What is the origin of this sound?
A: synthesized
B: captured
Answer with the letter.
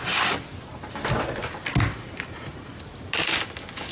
B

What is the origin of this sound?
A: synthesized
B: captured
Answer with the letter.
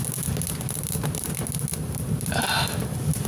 B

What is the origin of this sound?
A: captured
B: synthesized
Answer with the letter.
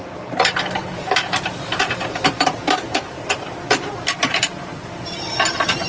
B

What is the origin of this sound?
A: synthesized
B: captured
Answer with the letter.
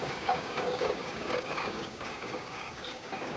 A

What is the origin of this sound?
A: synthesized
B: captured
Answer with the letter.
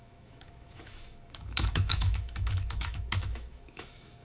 A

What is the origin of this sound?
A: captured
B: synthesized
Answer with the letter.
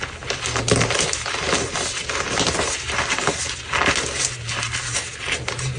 A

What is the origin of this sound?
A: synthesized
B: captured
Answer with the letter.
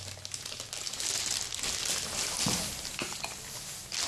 B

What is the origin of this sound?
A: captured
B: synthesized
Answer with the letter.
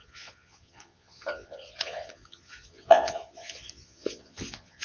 B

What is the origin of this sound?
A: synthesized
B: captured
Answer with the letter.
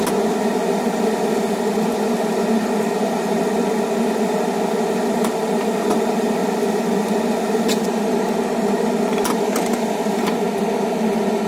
B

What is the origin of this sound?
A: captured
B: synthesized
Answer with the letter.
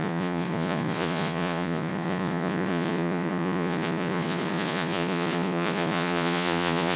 B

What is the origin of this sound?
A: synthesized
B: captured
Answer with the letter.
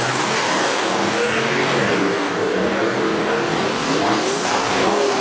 A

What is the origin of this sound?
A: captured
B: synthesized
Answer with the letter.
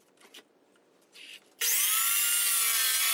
A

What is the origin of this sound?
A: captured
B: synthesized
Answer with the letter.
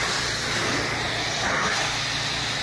A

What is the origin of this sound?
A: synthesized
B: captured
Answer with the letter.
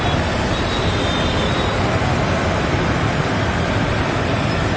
B